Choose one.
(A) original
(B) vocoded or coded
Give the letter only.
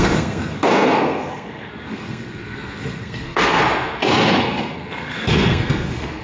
B